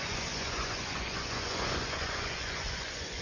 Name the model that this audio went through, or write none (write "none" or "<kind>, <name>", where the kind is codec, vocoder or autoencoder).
vocoder, Vocos